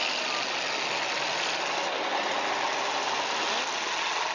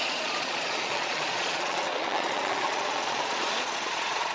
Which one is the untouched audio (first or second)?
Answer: first